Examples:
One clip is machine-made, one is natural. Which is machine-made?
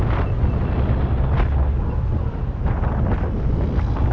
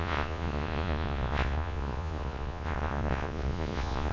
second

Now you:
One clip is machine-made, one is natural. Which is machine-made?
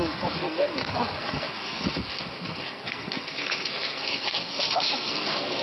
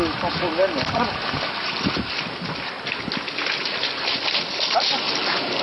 first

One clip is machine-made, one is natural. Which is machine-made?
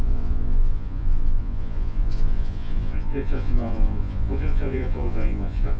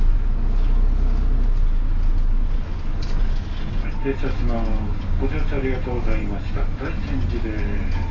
first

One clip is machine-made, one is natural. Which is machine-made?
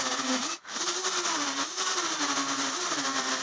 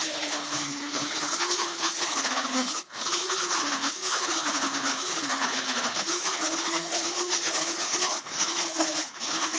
second